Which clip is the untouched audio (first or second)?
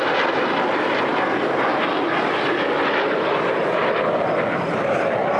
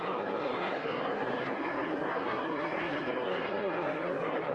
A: first